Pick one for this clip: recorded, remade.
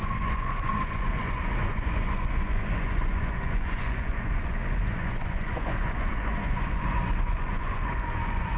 remade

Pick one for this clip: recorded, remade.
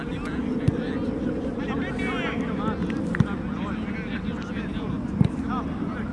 recorded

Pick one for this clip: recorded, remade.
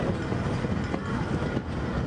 recorded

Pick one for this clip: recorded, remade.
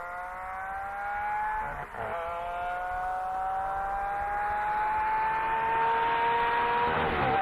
recorded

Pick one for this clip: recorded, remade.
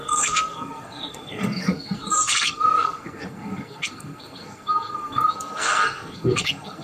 remade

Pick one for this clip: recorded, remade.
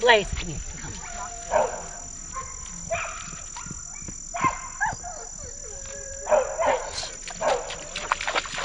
recorded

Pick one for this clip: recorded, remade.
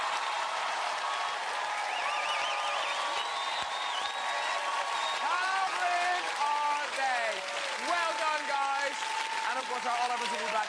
recorded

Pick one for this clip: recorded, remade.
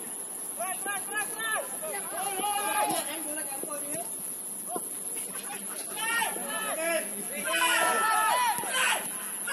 recorded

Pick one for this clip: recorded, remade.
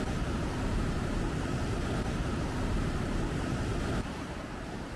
remade